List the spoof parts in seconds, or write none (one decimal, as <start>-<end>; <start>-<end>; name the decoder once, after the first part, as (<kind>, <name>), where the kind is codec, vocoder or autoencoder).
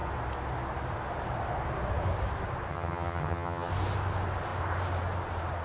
2.7-3.7 (vocoder, HiFi-GAN)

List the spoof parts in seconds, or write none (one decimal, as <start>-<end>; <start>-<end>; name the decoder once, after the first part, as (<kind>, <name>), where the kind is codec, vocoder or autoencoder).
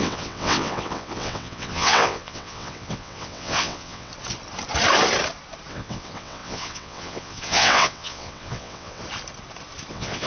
0.0-4.1 (vocoder, WaveNeXt); 5.7-9.0; 9.9-10.3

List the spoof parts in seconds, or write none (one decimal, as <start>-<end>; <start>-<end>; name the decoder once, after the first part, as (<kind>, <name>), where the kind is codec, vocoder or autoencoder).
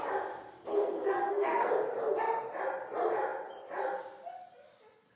0.7-1.7 (codec, SNAC)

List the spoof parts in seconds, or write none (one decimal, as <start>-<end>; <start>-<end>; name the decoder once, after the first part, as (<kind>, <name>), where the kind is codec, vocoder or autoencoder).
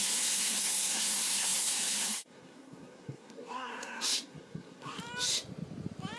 0.0-5.0 (codec, SNAC)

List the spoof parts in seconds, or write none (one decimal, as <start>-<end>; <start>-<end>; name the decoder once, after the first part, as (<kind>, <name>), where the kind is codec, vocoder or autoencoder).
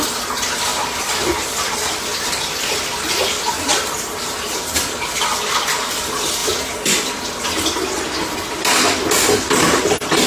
0.7-1.9 (vocoder, BigVGAN v2); 3.7-4.5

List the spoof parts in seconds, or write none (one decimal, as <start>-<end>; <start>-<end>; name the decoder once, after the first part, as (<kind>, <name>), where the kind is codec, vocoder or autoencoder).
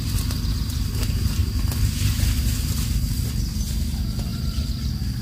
none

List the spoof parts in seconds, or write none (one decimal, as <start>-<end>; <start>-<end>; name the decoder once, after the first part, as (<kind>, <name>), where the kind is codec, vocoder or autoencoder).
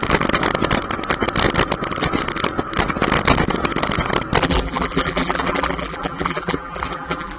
4.4-7.4 (vocoder, BigVGAN v2)